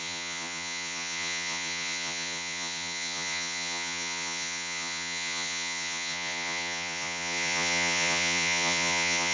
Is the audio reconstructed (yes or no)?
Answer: yes